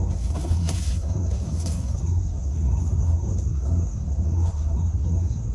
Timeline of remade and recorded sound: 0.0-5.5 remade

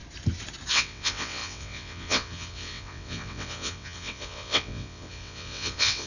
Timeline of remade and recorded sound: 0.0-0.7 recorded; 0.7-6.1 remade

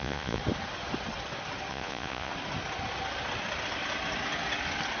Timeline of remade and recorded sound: 0.0-0.4 remade; 0.4-1.7 recorded; 1.7-2.3 remade; 2.3-5.0 recorded

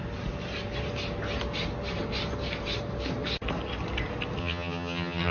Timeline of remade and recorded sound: 0.0-4.4 recorded; 4.4-5.3 remade